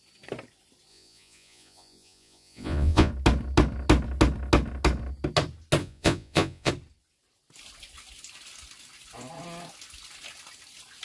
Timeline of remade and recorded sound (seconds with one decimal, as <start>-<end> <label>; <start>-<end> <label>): 0.0-0.9 recorded; 0.9-3.1 remade; 3.1-5.8 recorded; 5.8-6.7 remade; 6.7-11.0 recorded